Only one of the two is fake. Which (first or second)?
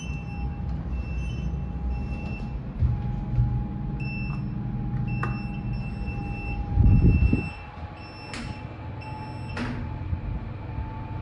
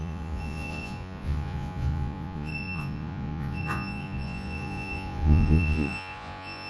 second